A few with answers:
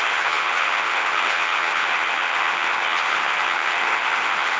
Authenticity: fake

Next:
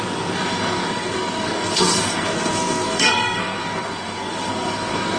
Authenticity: fake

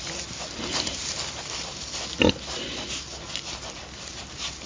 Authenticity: real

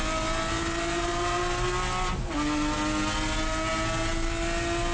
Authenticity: real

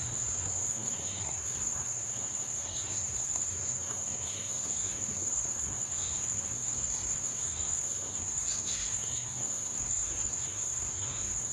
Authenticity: fake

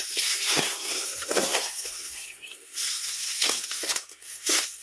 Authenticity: fake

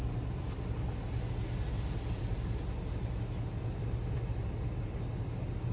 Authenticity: real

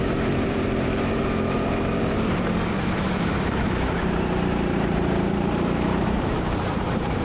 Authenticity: fake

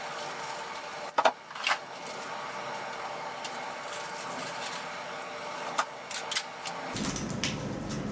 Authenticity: real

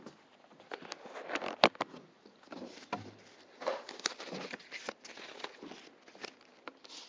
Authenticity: real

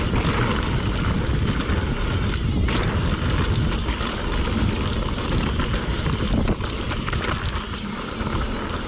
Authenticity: real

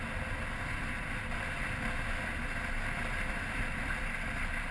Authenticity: real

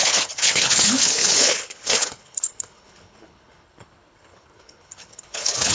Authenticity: fake